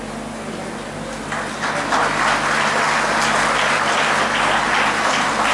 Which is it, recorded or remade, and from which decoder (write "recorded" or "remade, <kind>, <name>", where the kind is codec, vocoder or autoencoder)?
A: recorded